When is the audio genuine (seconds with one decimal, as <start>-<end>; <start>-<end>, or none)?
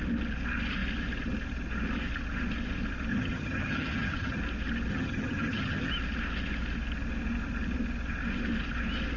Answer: 0.0-3.1; 4.4-4.9; 5.9-9.2